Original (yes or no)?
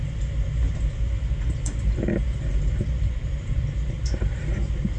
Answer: yes